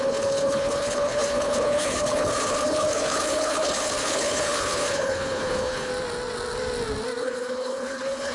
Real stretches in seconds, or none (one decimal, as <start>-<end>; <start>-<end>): 5.9-7.2